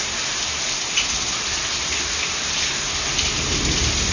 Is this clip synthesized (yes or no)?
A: no